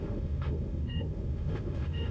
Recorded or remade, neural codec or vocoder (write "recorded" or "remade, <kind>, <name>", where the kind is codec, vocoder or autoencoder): remade, autoencoder, DAC-VAE